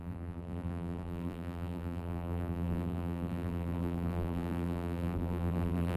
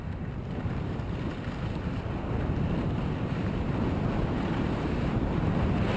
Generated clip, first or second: first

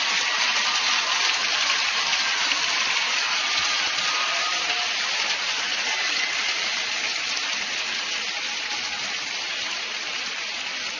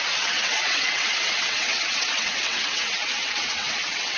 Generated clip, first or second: second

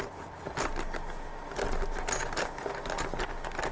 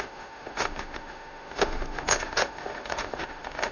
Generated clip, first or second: second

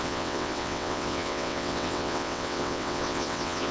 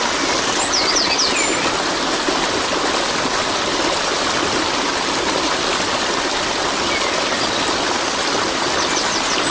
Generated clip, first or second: first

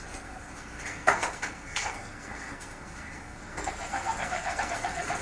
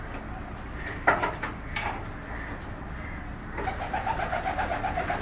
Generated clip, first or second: first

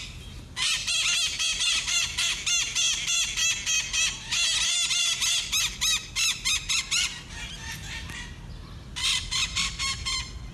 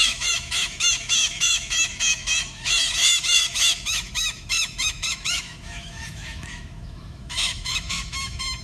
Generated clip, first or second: second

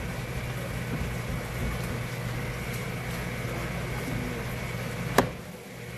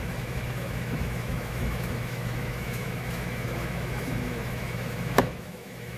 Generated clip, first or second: second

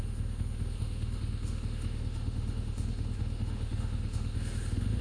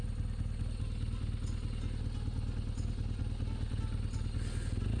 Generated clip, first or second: first